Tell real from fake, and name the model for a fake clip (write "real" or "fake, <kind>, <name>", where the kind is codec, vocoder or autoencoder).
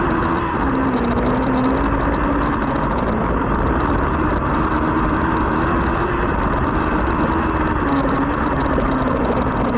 real